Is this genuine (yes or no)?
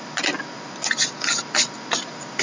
yes